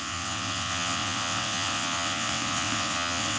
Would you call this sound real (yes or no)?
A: no